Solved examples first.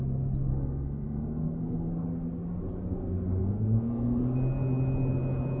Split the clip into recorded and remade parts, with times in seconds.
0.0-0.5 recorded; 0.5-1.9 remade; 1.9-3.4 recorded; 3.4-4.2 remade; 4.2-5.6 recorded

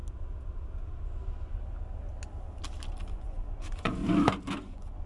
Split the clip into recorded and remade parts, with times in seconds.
0.0-3.1 recorded; 3.1-4.0 remade; 4.0-4.6 recorded; 4.6-5.1 remade

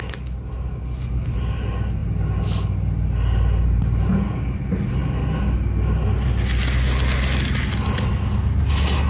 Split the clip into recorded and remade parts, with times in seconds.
0.0-9.1 recorded

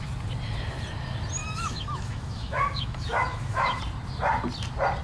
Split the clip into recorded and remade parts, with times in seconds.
0.0-1.4 recorded; 1.4-3.8 remade; 3.8-5.0 recorded

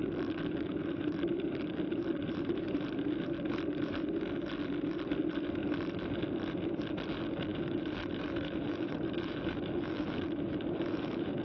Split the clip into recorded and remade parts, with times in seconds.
0.0-7.5 recorded; 7.5-11.4 remade

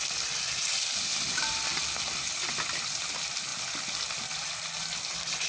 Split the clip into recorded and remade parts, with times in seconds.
0.0-5.5 recorded

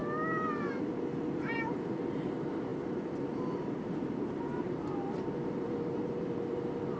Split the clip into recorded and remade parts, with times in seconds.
0.0-0.6 recorded; 0.6-7.0 remade